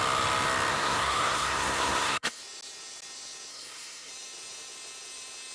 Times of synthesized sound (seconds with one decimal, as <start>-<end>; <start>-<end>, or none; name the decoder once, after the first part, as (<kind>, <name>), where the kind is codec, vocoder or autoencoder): 0.7-2.4 (codec, SNAC); 3.5-4.1